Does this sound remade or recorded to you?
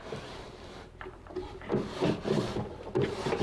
recorded